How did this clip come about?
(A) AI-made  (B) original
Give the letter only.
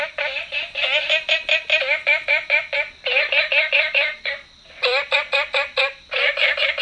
B